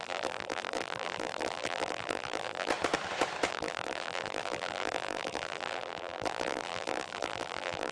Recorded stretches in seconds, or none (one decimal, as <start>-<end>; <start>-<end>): 2.7-3.5